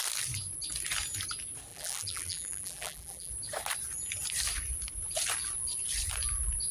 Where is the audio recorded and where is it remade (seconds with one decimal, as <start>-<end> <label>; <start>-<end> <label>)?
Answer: 0.0-1.7 recorded; 1.7-3.3 remade; 3.3-6.7 recorded